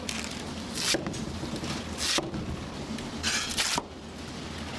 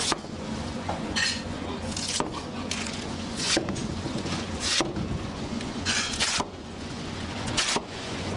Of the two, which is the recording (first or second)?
first